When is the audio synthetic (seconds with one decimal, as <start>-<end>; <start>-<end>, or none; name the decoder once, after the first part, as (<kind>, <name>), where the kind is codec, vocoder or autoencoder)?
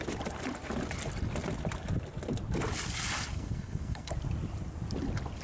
3.3-4.1 (codec, SNAC)